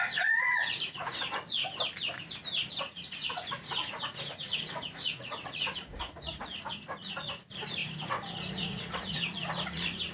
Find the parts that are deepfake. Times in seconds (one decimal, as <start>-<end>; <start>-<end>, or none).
0.0-1.6; 2.8-10.1